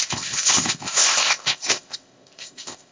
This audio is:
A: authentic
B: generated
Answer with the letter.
B